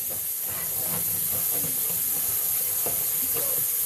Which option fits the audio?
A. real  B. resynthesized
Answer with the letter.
A